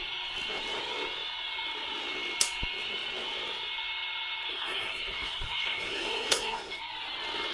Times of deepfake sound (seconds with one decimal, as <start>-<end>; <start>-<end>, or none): 4.5-6.8